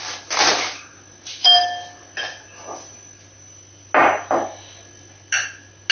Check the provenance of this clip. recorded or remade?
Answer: recorded